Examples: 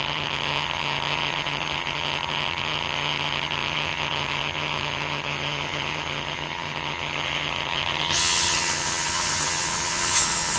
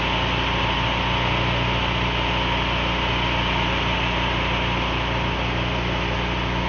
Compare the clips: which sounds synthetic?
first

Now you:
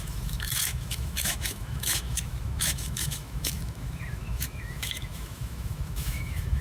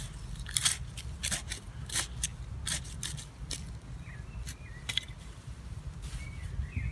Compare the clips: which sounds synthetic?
first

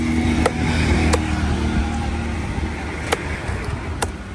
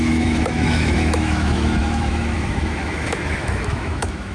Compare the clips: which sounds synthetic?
second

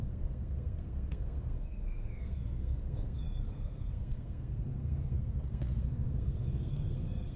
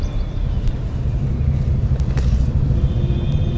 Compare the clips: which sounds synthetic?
first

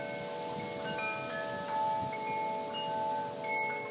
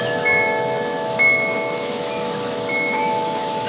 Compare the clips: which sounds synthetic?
second